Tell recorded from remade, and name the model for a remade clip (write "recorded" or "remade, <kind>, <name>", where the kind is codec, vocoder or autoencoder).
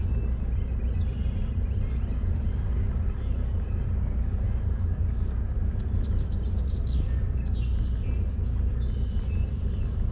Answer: recorded